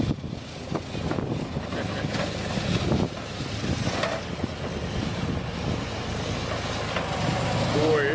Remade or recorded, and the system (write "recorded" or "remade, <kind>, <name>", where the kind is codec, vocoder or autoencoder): recorded